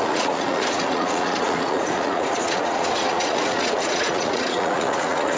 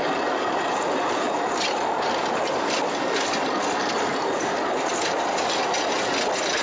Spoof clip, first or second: first